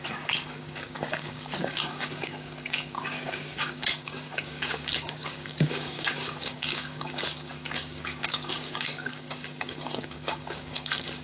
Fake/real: fake